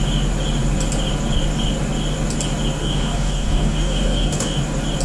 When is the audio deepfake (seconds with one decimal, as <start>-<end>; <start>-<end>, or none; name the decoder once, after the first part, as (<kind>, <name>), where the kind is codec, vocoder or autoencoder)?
2.8-4.6 (codec, DAC)